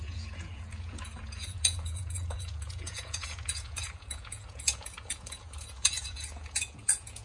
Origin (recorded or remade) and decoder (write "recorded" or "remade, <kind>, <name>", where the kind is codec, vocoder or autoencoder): remade, vocoder, Vocos